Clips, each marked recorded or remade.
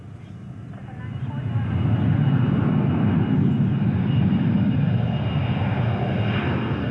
recorded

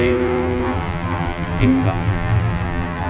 remade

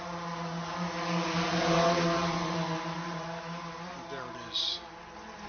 recorded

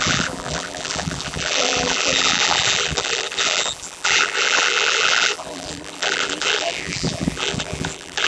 remade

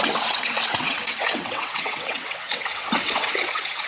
remade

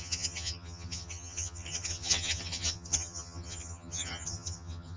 remade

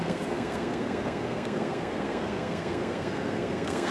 remade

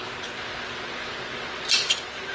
recorded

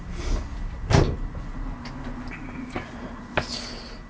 recorded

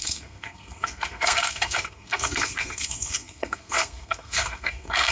remade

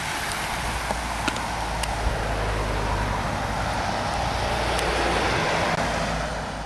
recorded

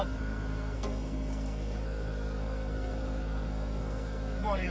remade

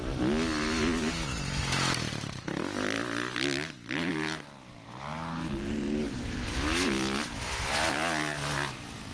recorded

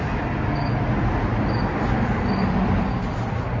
recorded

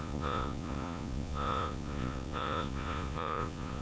remade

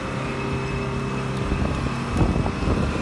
recorded